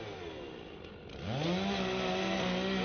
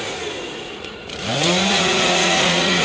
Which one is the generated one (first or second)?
second